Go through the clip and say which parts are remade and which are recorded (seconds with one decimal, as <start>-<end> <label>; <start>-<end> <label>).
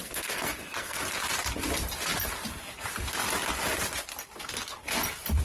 0.0-1.0 remade; 1.0-5.4 recorded